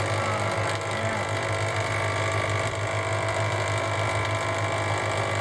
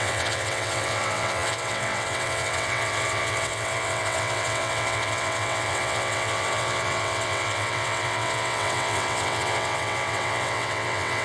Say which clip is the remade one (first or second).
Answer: second